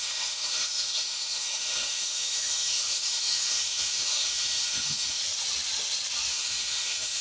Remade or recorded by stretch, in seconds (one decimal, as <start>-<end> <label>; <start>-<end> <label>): 0.0-5.2 remade; 5.2-6.3 recorded; 6.3-7.2 remade